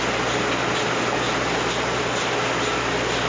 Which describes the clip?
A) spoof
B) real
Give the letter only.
B